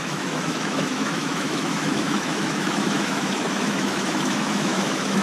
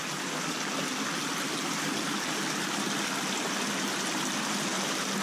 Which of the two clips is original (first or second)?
second